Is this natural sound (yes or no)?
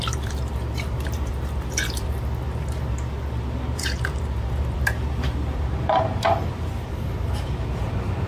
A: no